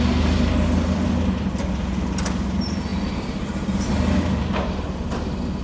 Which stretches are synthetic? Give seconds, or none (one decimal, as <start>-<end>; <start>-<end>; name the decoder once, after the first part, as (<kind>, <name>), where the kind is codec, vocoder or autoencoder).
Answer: none